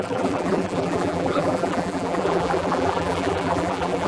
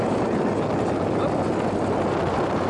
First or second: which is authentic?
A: second